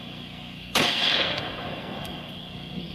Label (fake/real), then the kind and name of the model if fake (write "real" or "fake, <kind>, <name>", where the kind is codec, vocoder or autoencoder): fake, codec, SNAC